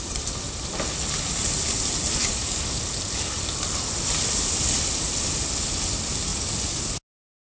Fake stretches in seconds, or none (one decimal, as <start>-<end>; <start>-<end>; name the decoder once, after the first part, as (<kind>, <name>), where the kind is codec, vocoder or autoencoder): 2.2-2.8 (codec, DAC)